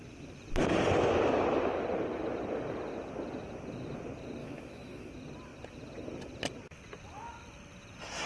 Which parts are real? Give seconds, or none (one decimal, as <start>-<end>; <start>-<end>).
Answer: 0.0-4.4; 5.1-8.3